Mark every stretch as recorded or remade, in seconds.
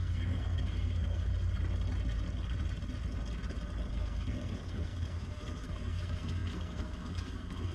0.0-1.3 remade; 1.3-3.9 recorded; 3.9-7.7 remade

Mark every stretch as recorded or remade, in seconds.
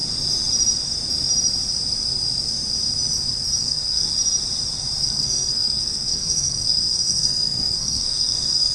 0.0-3.6 recorded; 3.6-4.1 remade; 4.1-5.0 recorded; 5.0-8.7 remade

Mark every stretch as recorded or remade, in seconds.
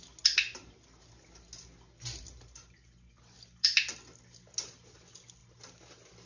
0.0-6.3 recorded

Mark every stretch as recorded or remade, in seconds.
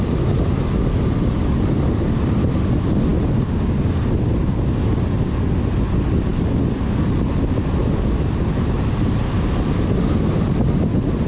0.0-11.3 recorded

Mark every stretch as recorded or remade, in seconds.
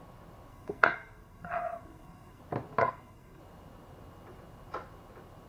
0.0-0.5 recorded; 0.5-2.4 remade; 2.4-2.8 recorded; 2.8-3.4 remade; 3.4-5.5 recorded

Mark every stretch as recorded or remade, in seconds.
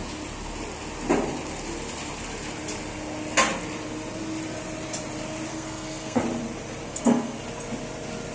0.0-5.5 recorded; 5.5-6.2 remade; 6.2-6.9 recorded; 6.9-7.4 remade; 7.4-8.3 recorded